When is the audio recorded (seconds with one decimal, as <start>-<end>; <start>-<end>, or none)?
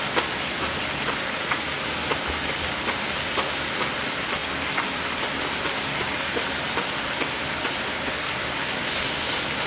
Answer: 0.0-9.7